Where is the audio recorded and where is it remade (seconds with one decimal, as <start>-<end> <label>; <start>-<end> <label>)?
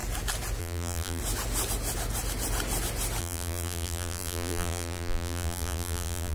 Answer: 0.0-0.6 recorded; 0.6-1.2 remade; 1.2-3.2 recorded; 3.2-6.3 remade